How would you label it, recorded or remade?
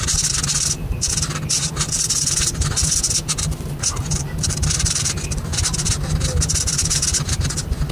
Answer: recorded